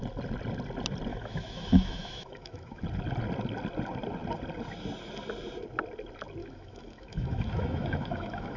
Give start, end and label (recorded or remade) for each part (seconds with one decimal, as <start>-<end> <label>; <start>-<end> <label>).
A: 0.0-1.1 recorded; 1.1-2.8 remade; 2.8-6.4 recorded; 6.4-8.6 remade